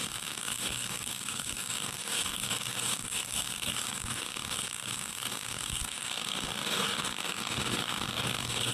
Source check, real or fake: fake